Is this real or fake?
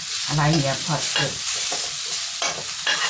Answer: real